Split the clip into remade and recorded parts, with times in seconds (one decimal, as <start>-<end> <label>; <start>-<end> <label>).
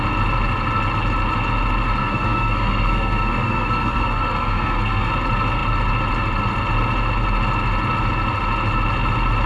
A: 0.0-2.0 recorded; 2.0-5.1 remade; 5.1-9.5 recorded